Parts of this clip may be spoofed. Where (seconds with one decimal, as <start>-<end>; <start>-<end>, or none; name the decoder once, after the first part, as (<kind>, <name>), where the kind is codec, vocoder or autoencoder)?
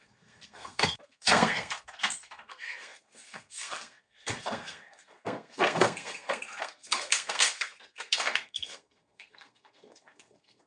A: 0.0-10.7 (codec, SNAC)